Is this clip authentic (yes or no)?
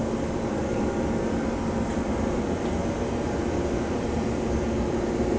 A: yes